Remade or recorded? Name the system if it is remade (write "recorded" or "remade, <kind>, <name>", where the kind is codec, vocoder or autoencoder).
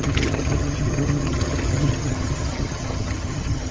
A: remade, vocoder, HiFi-GAN